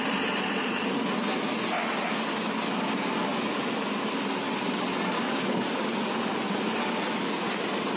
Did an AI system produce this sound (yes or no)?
no